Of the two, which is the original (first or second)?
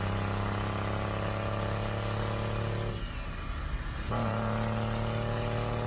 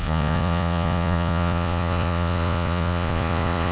first